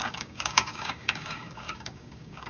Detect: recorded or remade remade